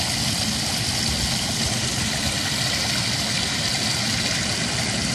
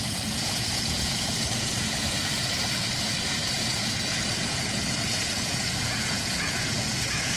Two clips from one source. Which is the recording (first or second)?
first